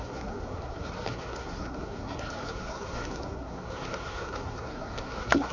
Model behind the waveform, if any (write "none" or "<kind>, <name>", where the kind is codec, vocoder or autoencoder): codec, SNAC